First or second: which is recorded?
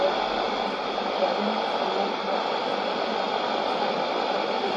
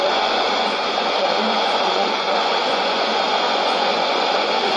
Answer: first